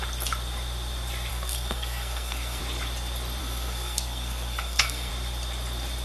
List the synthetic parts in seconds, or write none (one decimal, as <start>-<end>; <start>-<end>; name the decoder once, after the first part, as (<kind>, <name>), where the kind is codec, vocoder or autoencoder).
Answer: 1.3-2.6 (codec, SNAC); 3.4-5.1